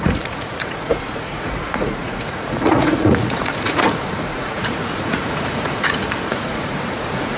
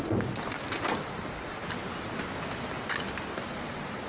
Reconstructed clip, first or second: first